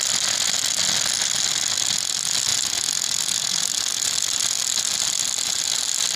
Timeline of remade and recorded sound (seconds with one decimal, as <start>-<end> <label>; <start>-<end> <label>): 0.0-6.2 recorded